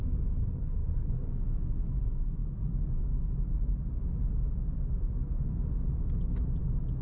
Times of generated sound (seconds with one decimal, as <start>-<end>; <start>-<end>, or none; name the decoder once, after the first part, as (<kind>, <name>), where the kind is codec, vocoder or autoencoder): 0.4-1.1 (codec, HILCodec)